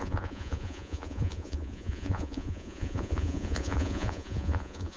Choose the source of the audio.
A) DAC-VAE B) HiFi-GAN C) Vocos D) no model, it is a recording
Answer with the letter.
C